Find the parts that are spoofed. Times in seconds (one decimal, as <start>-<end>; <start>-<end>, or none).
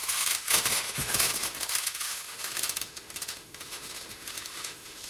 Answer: 0.0-5.1